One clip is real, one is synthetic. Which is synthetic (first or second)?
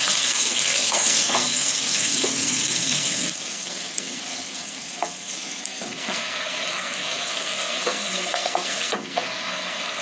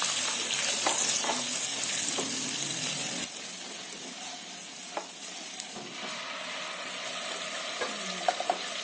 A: first